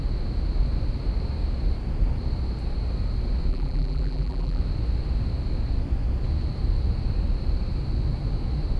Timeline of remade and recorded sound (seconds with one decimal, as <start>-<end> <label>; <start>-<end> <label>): 0.0-3.5 recorded; 3.5-4.6 remade; 4.6-8.8 recorded